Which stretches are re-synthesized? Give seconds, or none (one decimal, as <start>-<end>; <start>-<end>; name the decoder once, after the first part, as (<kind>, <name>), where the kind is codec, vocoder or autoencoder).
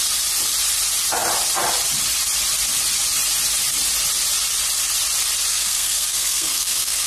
5.5-7.1 (codec, SNAC)